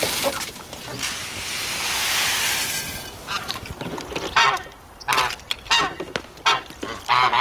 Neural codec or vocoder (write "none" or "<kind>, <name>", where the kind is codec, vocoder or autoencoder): none